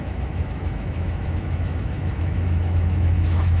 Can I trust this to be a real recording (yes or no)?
no